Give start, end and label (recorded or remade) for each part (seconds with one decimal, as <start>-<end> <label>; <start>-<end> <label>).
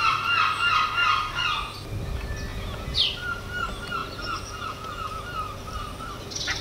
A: 0.0-2.5 recorded; 2.5-3.0 remade; 3.0-4.0 recorded; 4.0-5.2 remade; 5.2-6.6 recorded